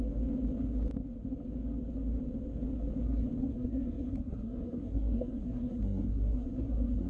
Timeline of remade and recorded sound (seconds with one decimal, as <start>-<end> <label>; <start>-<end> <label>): 0.0-3.5 recorded; 3.5-7.1 remade